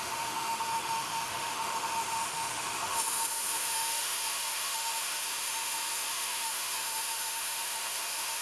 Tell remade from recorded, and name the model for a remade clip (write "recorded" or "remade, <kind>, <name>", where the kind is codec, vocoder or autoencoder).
remade, autoencoder, DAC-VAE